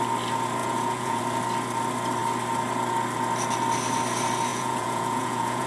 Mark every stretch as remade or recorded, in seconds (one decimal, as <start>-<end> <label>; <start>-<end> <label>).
0.0-0.6 recorded; 0.6-1.2 remade; 1.2-4.5 recorded; 4.5-5.7 remade